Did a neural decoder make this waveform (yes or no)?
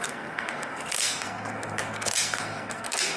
yes